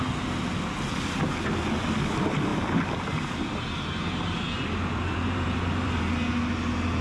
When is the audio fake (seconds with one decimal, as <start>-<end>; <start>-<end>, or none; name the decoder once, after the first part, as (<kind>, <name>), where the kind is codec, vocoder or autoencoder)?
2.5-6.0 (vocoder, BigVGAN v2)